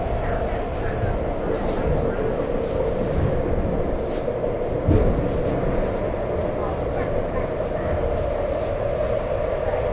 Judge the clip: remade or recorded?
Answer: recorded